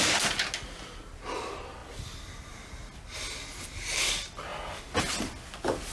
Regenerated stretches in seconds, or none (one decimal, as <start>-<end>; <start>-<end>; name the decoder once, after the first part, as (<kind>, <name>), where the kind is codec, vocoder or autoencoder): none